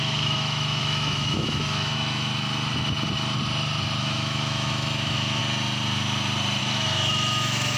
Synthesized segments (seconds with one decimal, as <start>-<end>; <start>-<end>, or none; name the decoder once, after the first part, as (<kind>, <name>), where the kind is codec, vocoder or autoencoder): 0.0-2.3 (autoencoder, DAC-VAE); 4.0-5.4; 6.6-7.8